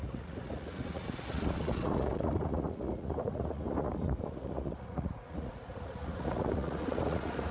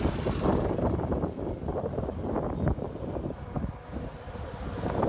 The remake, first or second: first